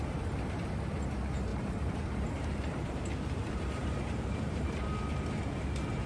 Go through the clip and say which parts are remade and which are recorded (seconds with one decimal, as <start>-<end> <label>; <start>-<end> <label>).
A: 0.0-1.5 recorded; 1.5-4.7 remade; 4.7-6.1 recorded